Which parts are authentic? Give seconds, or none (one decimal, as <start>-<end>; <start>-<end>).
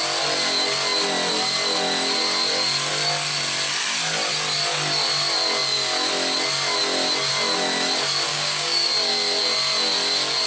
0.0-8.3; 8.9-10.5